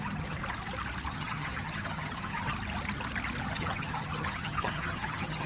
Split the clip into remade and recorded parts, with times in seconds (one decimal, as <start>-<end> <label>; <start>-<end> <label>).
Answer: 0.0-0.4 remade; 0.4-1.1 recorded; 1.1-2.5 remade; 2.5-3.4 recorded; 3.4-5.5 remade